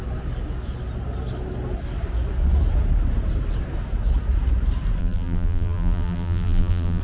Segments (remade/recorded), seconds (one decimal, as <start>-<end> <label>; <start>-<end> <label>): 0.0-5.0 recorded; 5.0-7.0 remade